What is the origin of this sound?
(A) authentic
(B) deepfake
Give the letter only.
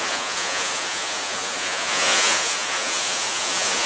B